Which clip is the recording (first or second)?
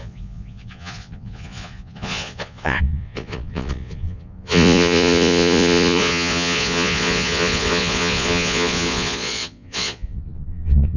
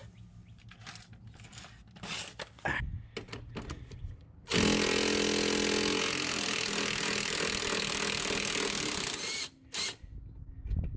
second